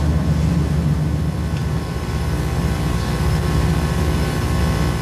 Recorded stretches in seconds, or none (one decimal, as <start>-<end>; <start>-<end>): 0.0-1.6; 4.6-5.0